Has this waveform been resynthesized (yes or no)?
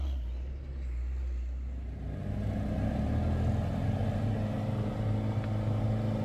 no